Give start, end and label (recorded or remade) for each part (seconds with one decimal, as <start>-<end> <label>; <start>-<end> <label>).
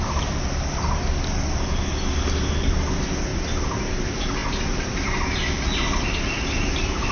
0.0-7.1 recorded